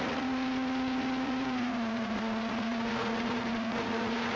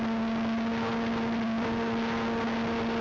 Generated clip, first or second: first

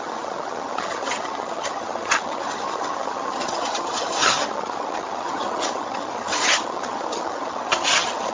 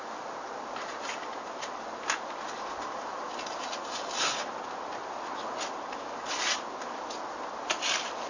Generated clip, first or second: first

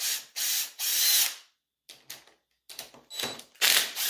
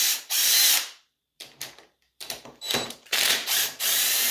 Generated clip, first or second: second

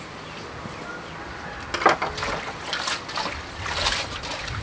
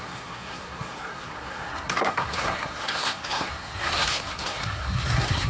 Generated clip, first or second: second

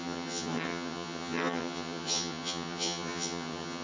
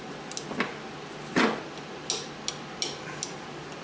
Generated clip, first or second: first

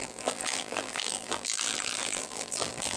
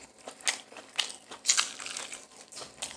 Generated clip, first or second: first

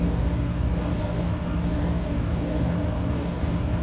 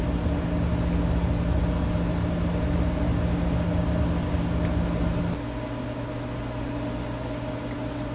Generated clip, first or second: first